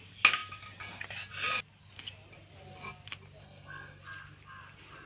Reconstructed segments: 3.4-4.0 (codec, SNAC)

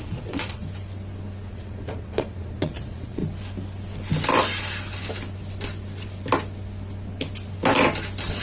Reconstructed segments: 0.0-0.6 (vocoder, Vocos); 1.5-3.2

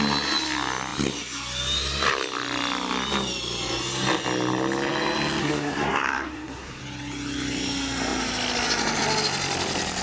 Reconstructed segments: 5.4-6.8 (codec, SNAC)

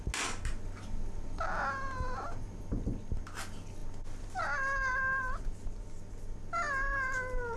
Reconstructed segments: none

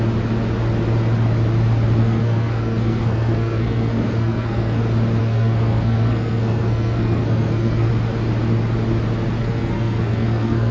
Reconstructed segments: 2.0-4.8 (codec, SNAC); 5.2-7.9; 9.4-10.7

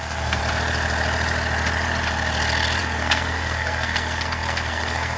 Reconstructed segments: 0.0-0.4 (codec, SNAC); 2.8-5.2

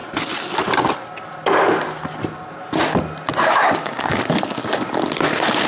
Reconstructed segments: 3.4-4.2 (codec, DAC)

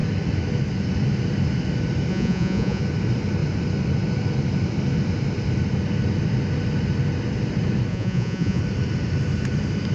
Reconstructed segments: 2.1-2.8 (vocoder, Vocos); 7.9-8.6